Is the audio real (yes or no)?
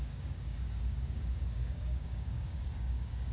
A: no